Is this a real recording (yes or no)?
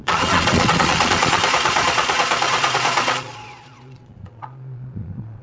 no